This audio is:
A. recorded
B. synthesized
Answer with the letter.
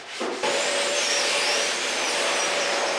B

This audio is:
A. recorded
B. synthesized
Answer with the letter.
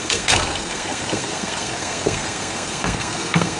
B